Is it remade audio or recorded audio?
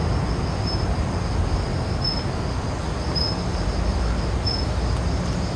recorded